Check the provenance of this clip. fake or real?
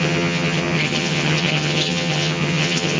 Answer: fake